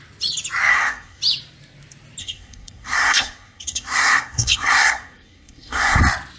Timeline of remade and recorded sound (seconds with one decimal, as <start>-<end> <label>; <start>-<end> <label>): 0.0-0.7 recorded; 0.7-1.2 remade; 1.2-2.2 recorded; 2.2-6.0 remade; 6.0-6.4 recorded